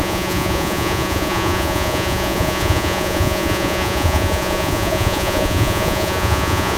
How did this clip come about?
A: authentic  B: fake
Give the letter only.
B